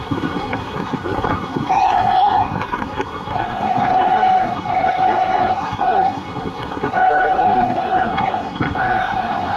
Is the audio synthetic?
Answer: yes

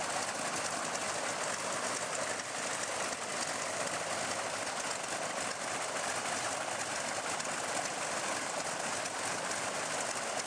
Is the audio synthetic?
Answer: no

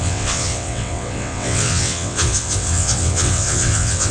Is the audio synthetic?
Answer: yes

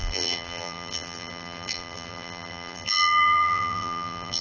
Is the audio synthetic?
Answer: yes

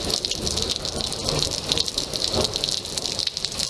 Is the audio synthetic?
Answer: no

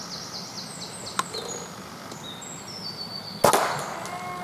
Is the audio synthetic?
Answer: no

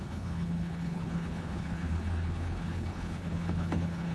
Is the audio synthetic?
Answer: yes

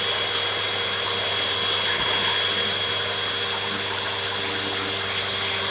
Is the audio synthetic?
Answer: no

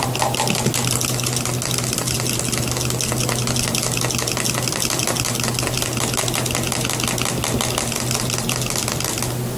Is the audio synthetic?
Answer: no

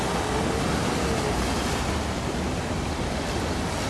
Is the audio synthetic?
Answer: no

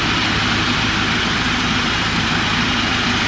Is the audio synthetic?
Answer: yes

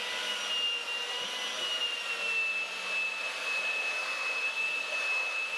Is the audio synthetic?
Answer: no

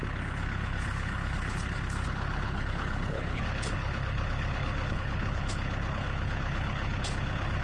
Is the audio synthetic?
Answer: yes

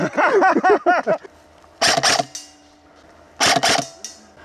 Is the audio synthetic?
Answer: no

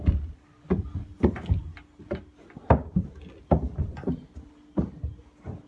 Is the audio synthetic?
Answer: no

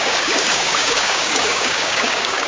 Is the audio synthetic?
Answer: yes